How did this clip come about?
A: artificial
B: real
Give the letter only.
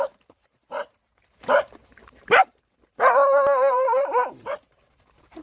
A